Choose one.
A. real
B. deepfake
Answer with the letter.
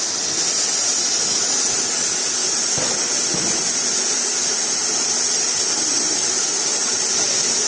A